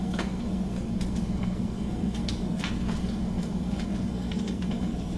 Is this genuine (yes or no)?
no